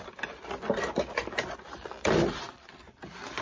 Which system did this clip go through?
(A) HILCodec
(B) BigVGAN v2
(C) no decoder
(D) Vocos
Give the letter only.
C